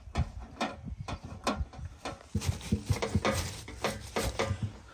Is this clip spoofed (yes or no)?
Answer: no